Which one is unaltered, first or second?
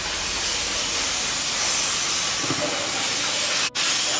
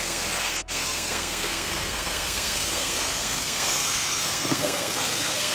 first